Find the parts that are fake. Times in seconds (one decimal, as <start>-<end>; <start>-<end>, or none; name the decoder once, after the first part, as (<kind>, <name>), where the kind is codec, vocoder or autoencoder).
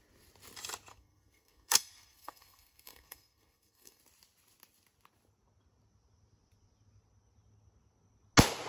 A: 0.9-4.0 (codec, SNAC)